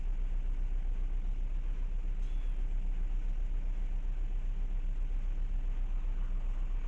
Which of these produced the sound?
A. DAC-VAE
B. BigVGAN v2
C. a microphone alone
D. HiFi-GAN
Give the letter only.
C